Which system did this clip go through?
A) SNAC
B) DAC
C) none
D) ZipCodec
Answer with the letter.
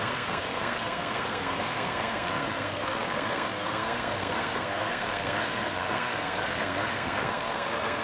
A